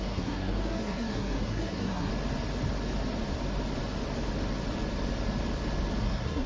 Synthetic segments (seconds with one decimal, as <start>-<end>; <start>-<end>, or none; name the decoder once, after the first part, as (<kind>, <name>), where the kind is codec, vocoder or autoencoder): 0.0-2.1 (codec, SNAC); 6.0-6.5